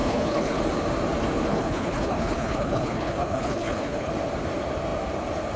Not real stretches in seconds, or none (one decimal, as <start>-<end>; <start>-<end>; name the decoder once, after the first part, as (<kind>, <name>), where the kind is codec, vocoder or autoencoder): 0.0-0.6 (codec, HILCodec); 1.5-4.1